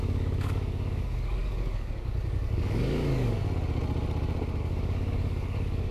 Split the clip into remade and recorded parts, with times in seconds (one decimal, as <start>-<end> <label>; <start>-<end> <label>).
0.0-3.4 remade; 3.4-4.6 recorded; 4.6-5.9 remade